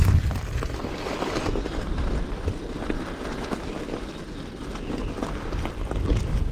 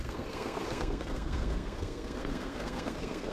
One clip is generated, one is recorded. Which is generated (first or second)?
second